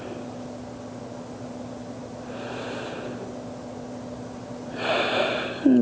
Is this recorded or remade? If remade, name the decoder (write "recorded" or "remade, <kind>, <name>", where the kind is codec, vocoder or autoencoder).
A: recorded